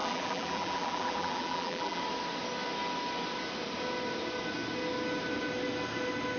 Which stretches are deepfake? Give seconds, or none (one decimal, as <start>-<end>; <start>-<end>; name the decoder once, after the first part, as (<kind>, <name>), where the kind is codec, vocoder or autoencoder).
0.0-2.0 (vocoder, BigVGAN v2)